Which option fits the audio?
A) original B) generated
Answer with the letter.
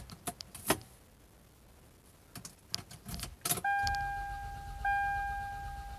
A